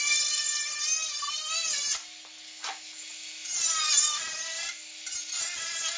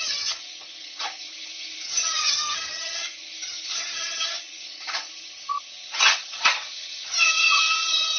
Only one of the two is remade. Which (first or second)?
second